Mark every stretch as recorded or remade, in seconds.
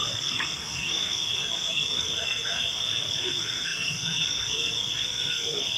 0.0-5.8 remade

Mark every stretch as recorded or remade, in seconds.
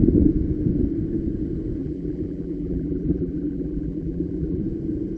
0.0-1.8 recorded; 1.8-4.6 remade; 4.6-5.2 recorded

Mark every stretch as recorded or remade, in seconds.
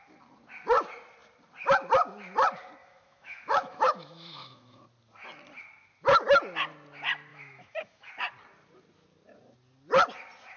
0.0-2.8 recorded; 2.8-4.8 remade; 4.8-7.3 recorded; 7.3-8.1 remade; 8.1-10.6 recorded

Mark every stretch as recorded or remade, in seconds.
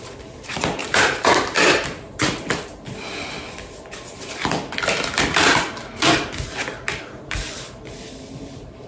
0.0-0.8 recorded; 0.8-1.3 remade; 1.3-8.9 recorded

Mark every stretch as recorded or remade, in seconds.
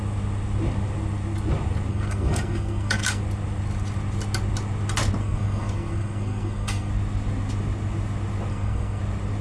0.0-1.9 recorded; 1.9-3.2 remade; 3.2-5.2 recorded; 5.2-6.9 remade; 6.9-8.5 recorded; 8.5-9.0 remade; 9.0-9.4 recorded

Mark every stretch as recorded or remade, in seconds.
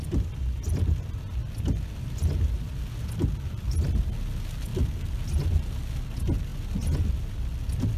0.0-8.0 recorded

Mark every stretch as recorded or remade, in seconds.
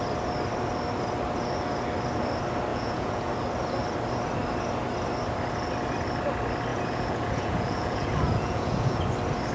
0.0-2.7 recorded; 2.7-3.2 remade; 3.2-6.7 recorded; 6.7-9.0 remade; 9.0-9.5 recorded